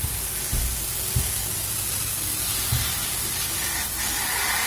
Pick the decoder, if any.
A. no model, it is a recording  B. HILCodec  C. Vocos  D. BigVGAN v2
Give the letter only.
A